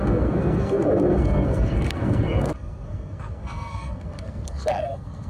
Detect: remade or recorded remade